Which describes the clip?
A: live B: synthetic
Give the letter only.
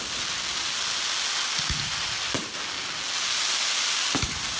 A